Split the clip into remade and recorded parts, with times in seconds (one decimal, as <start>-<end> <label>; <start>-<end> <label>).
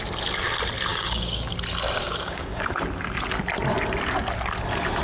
0.0-0.9 recorded; 0.9-1.5 remade; 1.5-2.0 recorded; 2.0-2.7 remade; 2.7-5.0 recorded